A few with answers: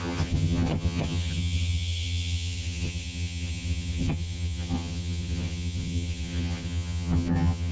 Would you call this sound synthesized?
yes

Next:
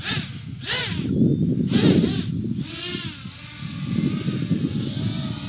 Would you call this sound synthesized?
no